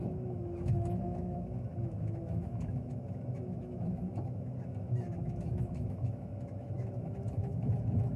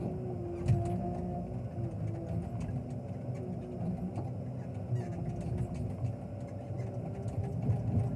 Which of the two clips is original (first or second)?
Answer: second